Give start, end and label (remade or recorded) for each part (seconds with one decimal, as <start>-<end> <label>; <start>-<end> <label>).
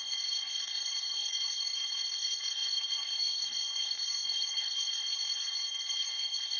0.0-6.6 remade